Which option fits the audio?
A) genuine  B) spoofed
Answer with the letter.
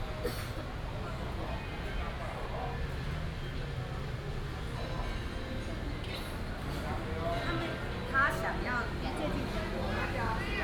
A